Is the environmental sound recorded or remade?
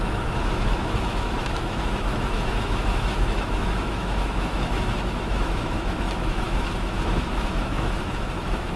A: remade